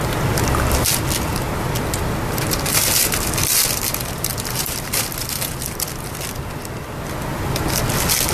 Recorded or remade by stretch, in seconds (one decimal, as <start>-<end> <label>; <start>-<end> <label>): 0.0-8.3 recorded